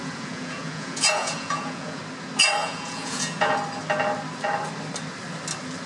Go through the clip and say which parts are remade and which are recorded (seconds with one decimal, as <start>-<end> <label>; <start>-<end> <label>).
0.0-2.0 remade; 2.0-2.6 recorded; 2.6-3.5 remade; 3.5-5.9 recorded